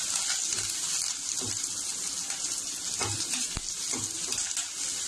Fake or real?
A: real